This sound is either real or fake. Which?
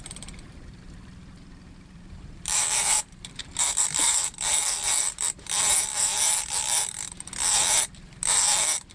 fake